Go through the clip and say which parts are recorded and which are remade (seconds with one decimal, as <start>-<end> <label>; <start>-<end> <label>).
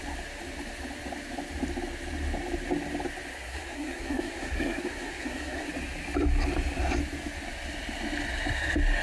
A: 0.0-3.3 recorded; 3.3-5.7 remade; 5.7-9.0 recorded